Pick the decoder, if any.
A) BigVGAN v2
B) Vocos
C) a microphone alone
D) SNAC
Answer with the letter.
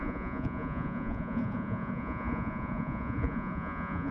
B